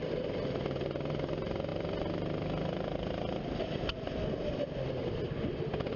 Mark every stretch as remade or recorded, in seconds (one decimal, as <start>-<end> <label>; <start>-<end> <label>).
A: 0.0-6.0 recorded